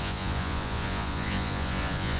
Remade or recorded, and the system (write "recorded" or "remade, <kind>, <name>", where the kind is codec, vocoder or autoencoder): remade, vocoder, Vocos